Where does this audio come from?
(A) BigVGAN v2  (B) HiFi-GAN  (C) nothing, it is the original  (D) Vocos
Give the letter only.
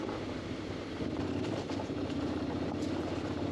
A